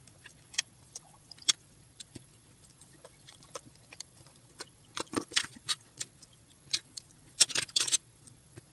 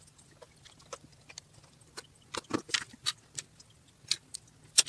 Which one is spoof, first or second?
first